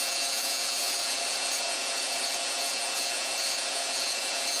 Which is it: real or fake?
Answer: fake